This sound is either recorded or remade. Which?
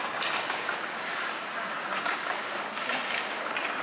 recorded